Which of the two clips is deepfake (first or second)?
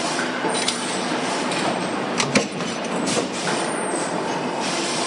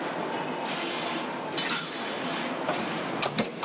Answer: first